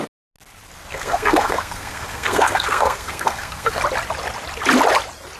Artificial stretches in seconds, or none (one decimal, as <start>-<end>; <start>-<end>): 0.9-3.8